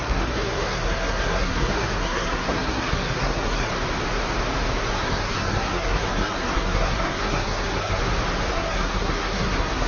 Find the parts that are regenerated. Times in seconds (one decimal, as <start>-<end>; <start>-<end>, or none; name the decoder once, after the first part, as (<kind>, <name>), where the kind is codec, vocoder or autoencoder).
0.0-3.7 (codec, SNAC); 4.9-8.0; 8.5-9.9